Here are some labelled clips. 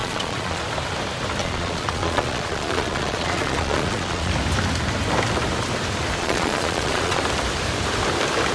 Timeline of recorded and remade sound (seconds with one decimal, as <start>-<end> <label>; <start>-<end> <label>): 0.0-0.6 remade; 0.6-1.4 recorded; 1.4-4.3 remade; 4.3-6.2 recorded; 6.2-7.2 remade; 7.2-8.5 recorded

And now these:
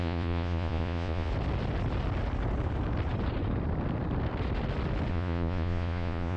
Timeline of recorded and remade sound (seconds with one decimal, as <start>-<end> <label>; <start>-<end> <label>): 0.0-1.3 remade; 1.3-5.1 recorded; 5.1-6.4 remade

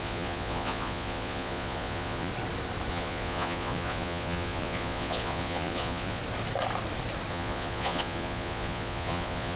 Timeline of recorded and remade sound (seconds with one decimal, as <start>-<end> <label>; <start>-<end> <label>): 0.0-2.3 remade; 2.3-2.9 recorded; 2.9-6.2 remade; 6.2-7.3 recorded; 7.3-9.6 remade

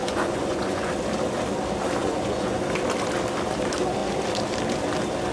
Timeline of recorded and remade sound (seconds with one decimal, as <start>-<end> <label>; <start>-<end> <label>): 0.0-0.9 remade; 0.9-2.0 recorded; 2.0-2.6 remade; 2.6-5.3 recorded

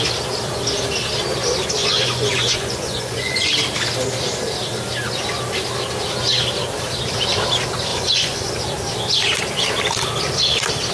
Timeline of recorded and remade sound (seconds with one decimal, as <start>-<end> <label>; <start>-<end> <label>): 0.0-1.8 recorded; 1.8-3.5 remade; 3.5-7.9 recorded; 7.9-8.5 remade; 8.5-10.9 recorded

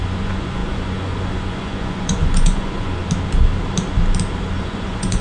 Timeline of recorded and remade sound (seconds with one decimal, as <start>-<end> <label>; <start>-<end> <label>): 0.0-3.0 remade; 3.0-4.6 recorded; 4.6-5.2 remade